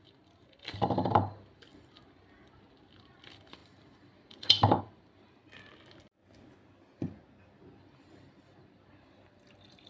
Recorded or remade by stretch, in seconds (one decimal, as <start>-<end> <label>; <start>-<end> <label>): 0.0-5.4 remade; 5.4-7.8 recorded; 7.8-9.9 remade